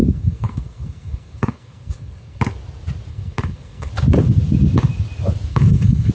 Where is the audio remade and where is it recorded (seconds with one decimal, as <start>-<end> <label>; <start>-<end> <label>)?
0.0-2.4 remade; 2.4-3.1 recorded; 3.1-3.9 remade; 3.9-5.5 recorded; 5.5-6.1 remade